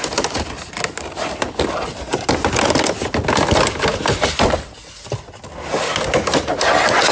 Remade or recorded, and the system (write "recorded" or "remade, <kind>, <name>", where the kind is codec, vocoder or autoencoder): recorded